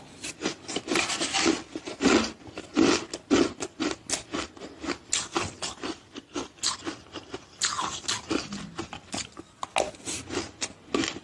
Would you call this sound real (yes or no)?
yes